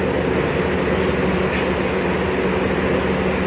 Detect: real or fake real